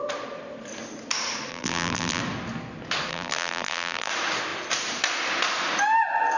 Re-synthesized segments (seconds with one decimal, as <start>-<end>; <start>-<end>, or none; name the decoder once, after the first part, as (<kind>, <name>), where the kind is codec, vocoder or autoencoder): 1.5-2.2 (vocoder, BigVGAN v2); 3.1-4.1